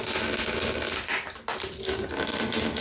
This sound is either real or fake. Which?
real